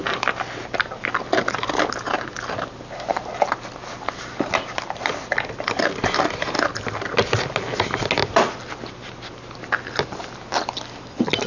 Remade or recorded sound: recorded